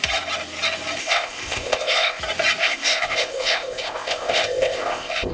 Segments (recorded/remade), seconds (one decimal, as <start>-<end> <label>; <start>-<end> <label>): 0.0-1.0 recorded; 1.0-2.2 remade; 2.2-2.6 recorded; 2.6-5.3 remade